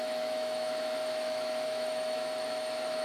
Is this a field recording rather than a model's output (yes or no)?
no